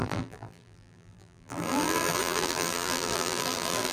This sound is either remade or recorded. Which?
remade